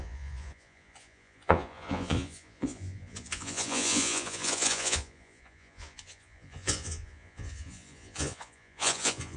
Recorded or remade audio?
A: remade